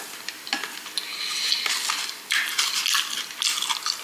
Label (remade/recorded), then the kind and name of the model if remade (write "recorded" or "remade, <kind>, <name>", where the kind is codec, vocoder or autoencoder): recorded